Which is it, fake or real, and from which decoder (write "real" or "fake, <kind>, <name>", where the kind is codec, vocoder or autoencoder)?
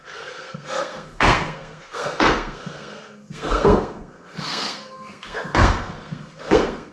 fake, codec, SNAC